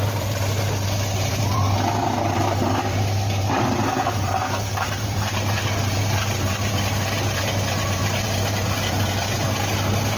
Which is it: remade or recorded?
remade